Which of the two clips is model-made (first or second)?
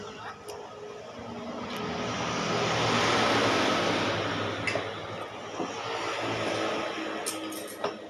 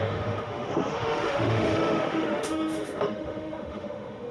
second